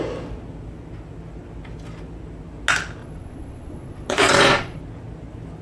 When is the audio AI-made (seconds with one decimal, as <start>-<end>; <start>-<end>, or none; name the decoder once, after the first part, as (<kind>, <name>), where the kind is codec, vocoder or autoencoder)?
3.0-4.8 (vocoder, Vocos)